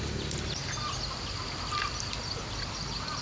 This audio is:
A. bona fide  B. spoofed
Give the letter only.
A